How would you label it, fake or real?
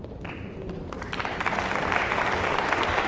real